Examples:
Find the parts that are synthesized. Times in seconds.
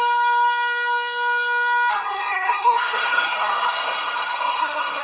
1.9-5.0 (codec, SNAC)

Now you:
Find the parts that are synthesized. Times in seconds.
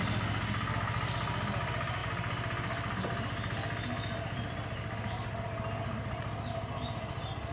none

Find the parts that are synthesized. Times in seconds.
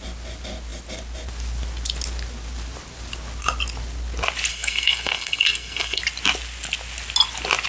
4.5-6.0 (codec, SNAC)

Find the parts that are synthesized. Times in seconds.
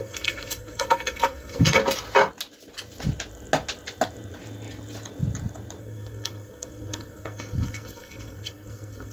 0.0-1.8 (codec, SNAC); 5.8-9.1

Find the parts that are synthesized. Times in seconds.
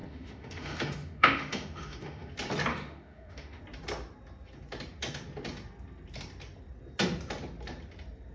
0.0-2.3 (autoencoder, DAC-VAE); 2.7-3.6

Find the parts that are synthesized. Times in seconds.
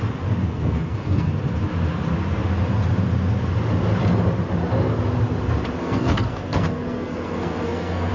0.4-1.3 (codec, SNAC); 5.8-8.1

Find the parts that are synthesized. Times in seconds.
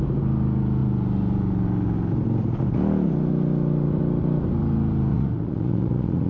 5.1-6.3 (vocoder, Vocos)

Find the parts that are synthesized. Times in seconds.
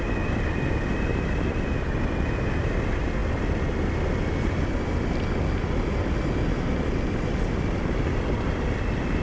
none